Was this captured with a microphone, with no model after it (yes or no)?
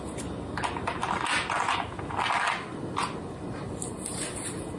yes